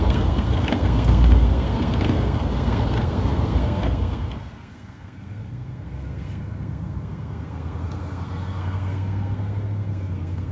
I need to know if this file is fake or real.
fake